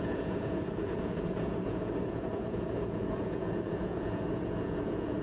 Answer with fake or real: fake